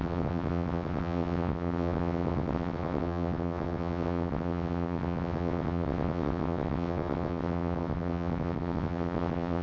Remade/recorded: remade